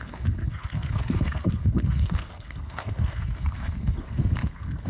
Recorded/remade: remade